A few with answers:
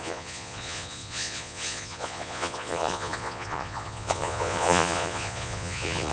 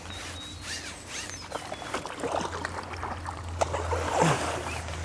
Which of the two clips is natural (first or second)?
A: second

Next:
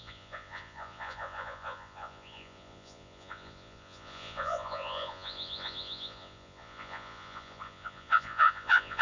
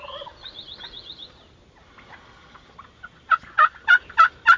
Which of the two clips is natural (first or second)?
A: second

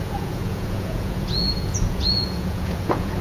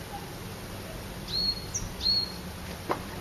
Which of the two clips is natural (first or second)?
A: second